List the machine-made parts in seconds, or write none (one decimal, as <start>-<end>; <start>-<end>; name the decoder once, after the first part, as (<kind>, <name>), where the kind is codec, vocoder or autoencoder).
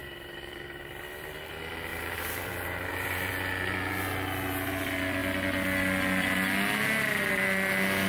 0.0-0.8 (vocoder, BigVGAN v2); 1.9-3.3